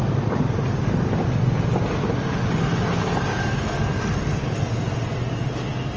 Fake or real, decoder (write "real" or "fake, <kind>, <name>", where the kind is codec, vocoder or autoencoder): real